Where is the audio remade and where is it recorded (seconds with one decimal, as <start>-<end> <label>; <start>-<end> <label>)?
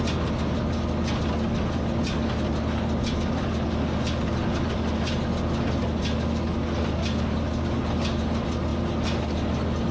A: 0.0-9.9 recorded